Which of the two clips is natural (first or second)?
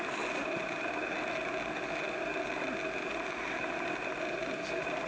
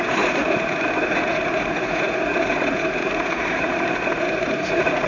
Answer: first